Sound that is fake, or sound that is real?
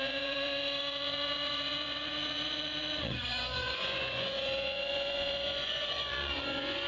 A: fake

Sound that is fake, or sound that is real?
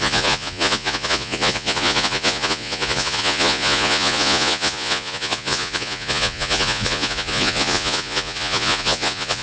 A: fake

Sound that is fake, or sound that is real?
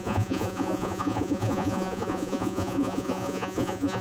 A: fake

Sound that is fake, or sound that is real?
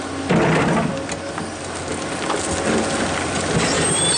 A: real